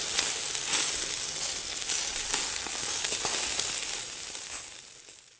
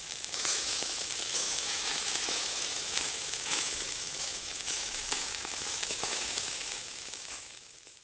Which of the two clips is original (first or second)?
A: first